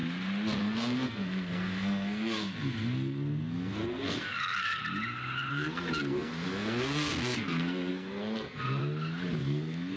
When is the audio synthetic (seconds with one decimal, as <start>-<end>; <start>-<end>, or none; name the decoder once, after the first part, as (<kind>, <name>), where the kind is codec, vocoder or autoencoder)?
0.6-4.8 (codec, SNAC); 5.5-8.8; 9.4-10.0